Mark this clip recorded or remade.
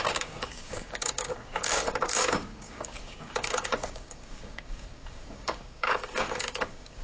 remade